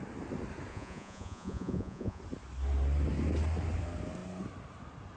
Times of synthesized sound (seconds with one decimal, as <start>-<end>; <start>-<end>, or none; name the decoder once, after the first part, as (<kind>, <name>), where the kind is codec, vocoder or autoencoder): 0.7-2.2 (vocoder, Vocos)